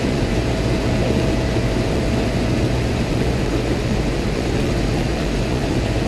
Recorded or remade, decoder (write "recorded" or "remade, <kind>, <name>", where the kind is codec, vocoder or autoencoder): remade, vocoder, Vocos